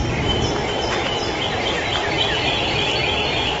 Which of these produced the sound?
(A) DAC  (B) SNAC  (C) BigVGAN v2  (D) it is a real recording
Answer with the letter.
D